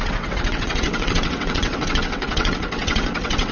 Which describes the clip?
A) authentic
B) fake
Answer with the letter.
B